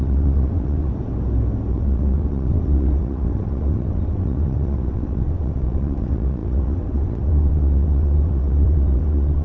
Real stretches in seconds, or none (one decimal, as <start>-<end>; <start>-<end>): 0.9-1.7